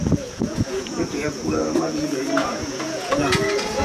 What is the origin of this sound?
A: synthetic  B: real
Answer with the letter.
A